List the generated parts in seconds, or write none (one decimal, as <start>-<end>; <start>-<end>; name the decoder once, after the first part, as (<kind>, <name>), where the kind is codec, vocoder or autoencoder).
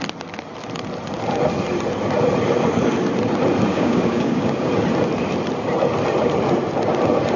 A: 3.7-4.7 (codec, DAC)